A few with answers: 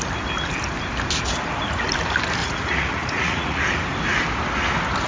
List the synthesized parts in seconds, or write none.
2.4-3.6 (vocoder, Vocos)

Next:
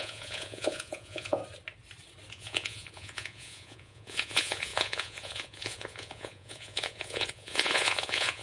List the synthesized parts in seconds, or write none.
0.0-1.4 (vocoder, Vocos); 2.3-8.4

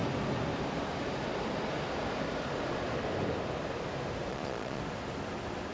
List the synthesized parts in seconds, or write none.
4.3-4.8 (vocoder, Vocos)

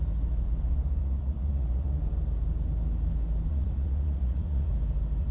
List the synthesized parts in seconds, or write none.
1.0-2.0 (vocoder, Vocos); 3.5-4.7

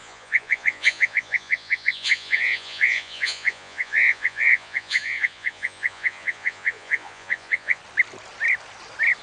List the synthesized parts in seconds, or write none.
0.0-7.8 (vocoder, Vocos)

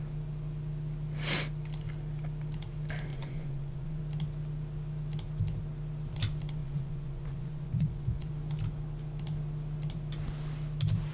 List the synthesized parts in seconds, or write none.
3.1-4.0 (vocoder, Vocos); 6.6-8.3

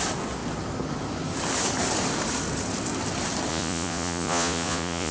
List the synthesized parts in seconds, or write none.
3.5-5.1 (vocoder, Vocos)